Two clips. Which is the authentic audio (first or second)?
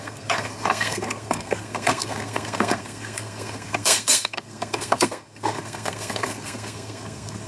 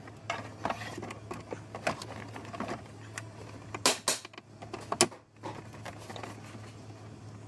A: second